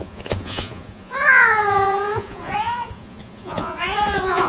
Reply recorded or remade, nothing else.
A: remade